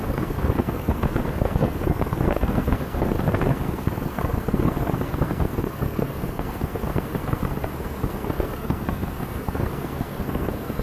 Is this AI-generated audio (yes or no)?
yes